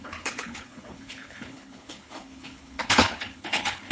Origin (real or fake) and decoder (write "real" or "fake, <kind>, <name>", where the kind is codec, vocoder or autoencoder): fake, codec, HILCodec